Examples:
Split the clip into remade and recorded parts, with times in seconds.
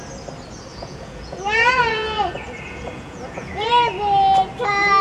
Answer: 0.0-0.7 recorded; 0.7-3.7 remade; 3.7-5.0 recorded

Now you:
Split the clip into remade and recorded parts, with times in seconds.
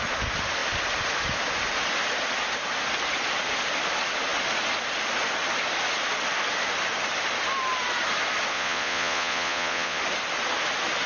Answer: 0.0-8.5 recorded; 8.5-10.0 remade; 10.0-11.1 recorded